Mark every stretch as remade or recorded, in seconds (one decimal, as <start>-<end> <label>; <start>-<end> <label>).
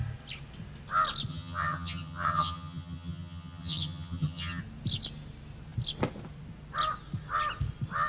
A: 0.0-1.3 recorded; 1.3-4.6 remade; 4.6-8.1 recorded